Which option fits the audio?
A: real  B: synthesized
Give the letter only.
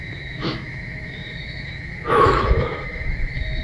B